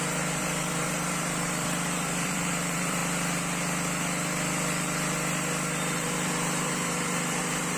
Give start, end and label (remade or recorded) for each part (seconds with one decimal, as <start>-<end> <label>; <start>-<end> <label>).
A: 0.0-3.0 remade; 3.0-5.9 recorded; 5.9-7.8 remade